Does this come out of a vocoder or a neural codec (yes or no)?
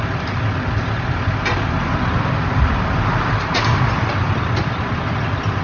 no